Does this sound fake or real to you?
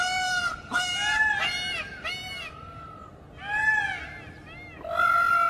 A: real